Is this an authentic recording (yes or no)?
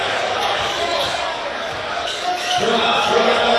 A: no